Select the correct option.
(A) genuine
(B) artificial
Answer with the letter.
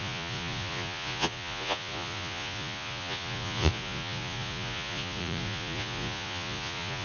B